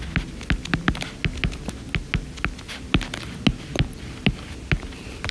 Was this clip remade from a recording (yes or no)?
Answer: no